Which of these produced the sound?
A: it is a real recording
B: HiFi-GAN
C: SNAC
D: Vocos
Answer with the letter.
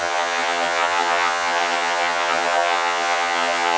B